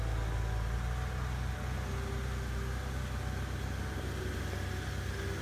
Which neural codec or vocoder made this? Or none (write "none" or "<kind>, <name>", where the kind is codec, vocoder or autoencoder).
none